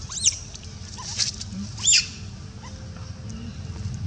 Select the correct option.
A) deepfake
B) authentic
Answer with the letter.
B